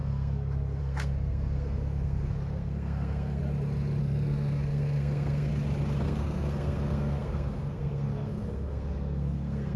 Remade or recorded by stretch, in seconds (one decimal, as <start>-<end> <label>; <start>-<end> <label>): 0.0-3.4 remade; 3.4-4.0 recorded; 4.0-5.5 remade; 5.5-6.0 recorded; 6.0-9.8 remade